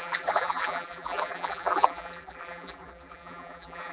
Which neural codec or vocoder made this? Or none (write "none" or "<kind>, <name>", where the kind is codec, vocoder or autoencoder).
vocoder, BigVGAN v2